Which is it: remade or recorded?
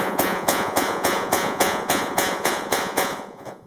remade